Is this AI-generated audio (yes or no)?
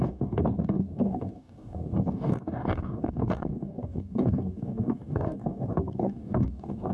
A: yes